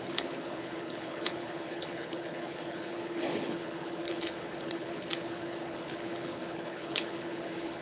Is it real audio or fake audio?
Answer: fake